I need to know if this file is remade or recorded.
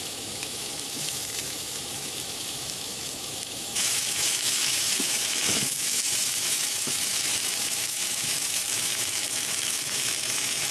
remade